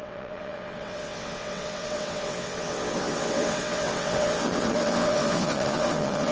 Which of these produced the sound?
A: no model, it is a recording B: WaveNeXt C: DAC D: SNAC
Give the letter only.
B